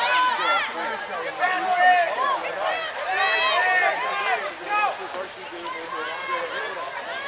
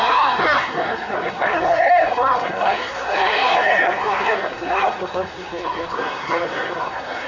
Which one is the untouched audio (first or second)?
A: first